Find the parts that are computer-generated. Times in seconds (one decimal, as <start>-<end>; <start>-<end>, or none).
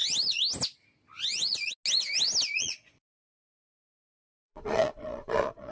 2.6-5.7